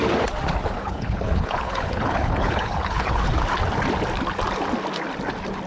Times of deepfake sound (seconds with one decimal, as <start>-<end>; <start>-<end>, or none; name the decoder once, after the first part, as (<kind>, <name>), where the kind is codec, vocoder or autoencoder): 0.8-3.2 (codec, HILCodec)